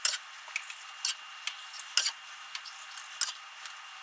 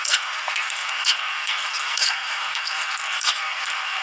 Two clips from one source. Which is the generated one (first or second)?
second